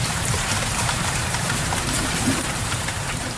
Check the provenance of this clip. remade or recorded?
remade